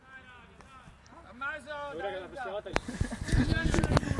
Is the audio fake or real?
real